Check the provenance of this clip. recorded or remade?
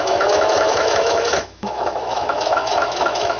remade